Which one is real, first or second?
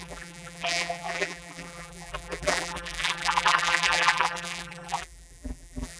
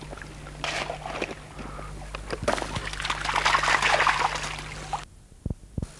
second